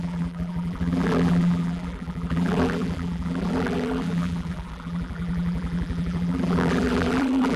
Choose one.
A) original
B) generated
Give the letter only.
B